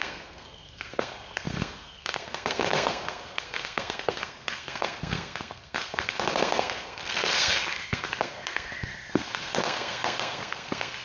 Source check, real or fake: fake